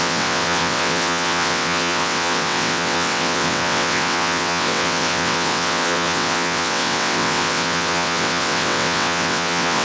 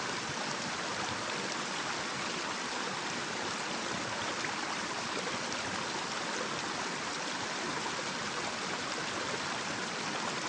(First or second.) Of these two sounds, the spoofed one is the first